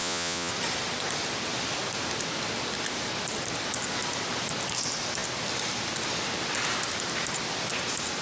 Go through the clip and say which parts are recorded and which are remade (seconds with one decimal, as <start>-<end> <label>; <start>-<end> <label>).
0.0-0.5 remade; 0.5-8.2 recorded